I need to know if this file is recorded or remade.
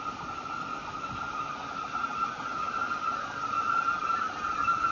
remade